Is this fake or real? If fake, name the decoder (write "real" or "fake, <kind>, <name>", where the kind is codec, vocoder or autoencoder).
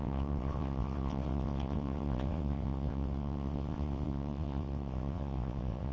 fake, vocoder, WaveNeXt